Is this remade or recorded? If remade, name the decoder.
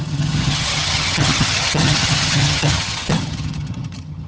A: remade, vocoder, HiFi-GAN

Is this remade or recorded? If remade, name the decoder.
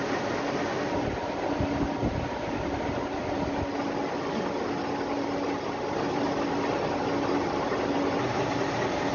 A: recorded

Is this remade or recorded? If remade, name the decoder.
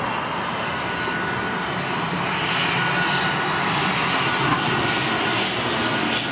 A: recorded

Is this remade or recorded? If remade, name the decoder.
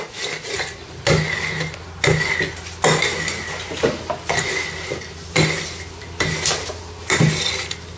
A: recorded